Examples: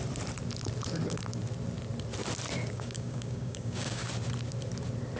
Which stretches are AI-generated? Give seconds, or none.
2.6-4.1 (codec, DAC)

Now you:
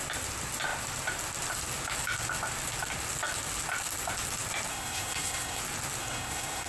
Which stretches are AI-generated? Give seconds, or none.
4.7-5.6 (codec, SNAC); 6.0-6.7